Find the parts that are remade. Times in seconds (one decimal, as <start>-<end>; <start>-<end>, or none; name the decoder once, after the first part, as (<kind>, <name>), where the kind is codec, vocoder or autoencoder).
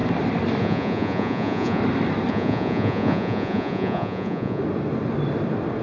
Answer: 0.6-1.8 (vocoder, Vocos); 2.3-4.6